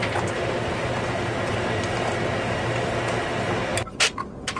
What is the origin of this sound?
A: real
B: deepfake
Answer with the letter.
A